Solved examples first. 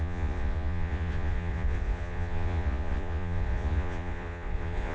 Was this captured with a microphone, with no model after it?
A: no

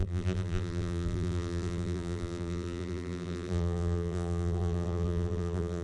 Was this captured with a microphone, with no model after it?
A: no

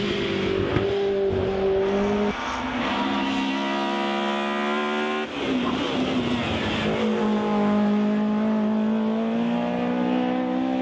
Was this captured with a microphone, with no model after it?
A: yes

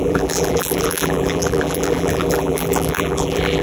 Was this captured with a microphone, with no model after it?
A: no